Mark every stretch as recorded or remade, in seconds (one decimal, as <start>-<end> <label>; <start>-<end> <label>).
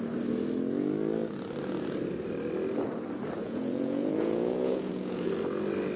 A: 0.0-3.4 recorded; 3.4-5.3 remade; 5.3-6.0 recorded